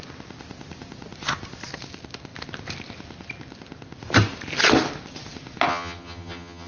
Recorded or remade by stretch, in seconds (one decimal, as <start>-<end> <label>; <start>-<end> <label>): 0.0-5.7 recorded; 5.7-6.7 remade